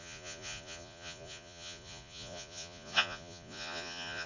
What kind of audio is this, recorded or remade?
remade